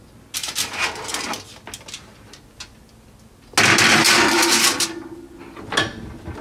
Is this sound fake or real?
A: real